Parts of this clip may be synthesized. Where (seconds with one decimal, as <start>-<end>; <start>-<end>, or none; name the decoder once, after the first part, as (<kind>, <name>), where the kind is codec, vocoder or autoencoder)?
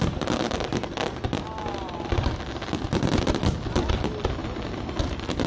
none